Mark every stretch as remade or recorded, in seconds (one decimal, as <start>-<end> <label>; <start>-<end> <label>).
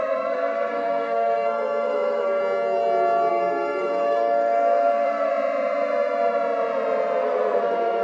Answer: 0.0-2.4 remade; 2.4-3.3 recorded; 3.3-5.3 remade; 5.3-7.2 recorded; 7.2-8.0 remade